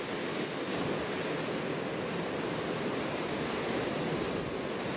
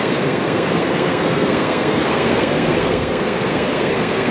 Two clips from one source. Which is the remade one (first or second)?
second